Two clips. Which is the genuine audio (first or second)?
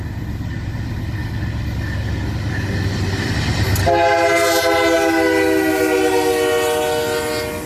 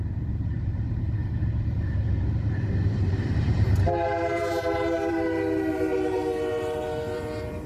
first